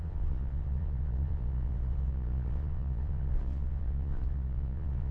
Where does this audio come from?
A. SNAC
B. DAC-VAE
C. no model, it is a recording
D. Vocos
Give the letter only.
D